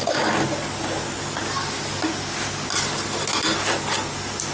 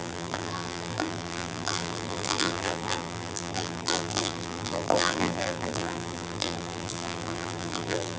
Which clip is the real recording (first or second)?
first